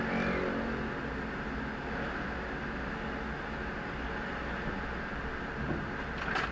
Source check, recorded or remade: recorded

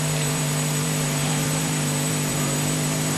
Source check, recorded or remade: remade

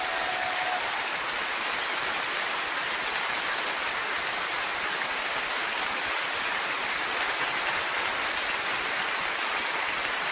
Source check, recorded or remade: recorded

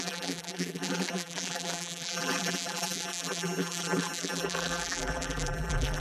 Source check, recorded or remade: remade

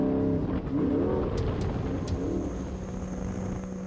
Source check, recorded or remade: recorded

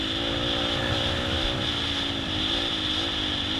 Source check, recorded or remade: recorded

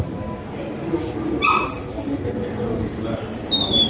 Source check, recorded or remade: remade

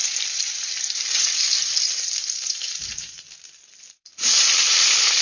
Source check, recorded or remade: remade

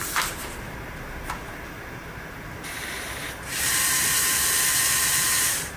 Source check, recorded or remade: remade